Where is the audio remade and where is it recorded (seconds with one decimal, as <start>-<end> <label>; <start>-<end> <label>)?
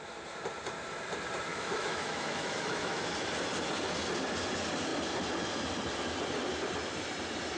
0.0-1.5 recorded; 1.5-3.1 remade; 3.1-7.6 recorded